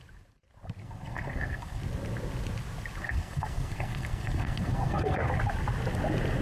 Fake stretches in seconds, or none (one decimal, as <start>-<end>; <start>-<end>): 0.8-1.8; 3.0-5.3